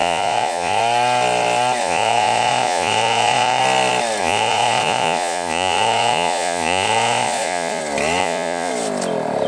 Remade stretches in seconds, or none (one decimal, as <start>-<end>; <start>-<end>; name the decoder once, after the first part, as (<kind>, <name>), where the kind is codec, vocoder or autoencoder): 0.0-0.8 (vocoder, Vocos); 1.8-3.6; 4.2-7.8; 8.2-8.7